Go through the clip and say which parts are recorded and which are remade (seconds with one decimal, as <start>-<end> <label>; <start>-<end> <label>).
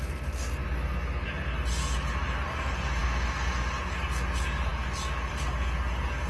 0.0-6.3 recorded